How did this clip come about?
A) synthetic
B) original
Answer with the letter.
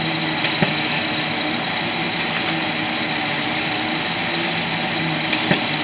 B